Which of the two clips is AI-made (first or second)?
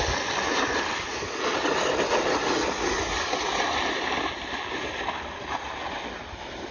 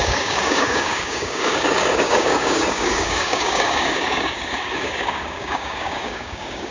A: second